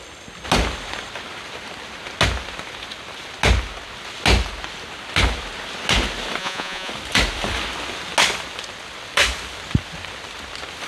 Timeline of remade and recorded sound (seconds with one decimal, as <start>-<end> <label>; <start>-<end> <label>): 0.0-6.4 recorded; 6.4-6.9 remade; 6.9-10.9 recorded